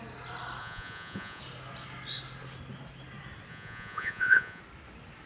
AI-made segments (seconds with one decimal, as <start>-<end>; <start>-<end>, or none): 0.6-1.4; 3.5-4.6